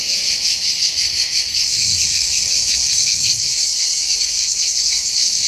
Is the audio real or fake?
fake